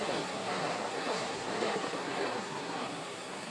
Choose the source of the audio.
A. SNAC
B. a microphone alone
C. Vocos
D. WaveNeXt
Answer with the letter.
A